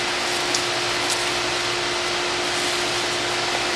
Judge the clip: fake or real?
real